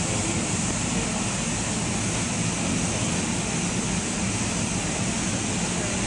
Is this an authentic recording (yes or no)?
yes